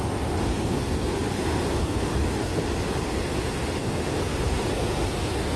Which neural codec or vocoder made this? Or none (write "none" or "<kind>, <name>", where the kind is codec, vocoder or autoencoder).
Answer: none